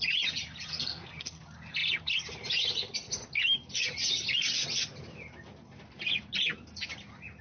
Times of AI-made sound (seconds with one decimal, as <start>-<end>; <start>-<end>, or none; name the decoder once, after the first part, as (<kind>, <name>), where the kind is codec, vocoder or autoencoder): 0.7-1.4 (codec, SNAC)